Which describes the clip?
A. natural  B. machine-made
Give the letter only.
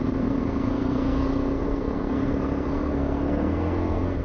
B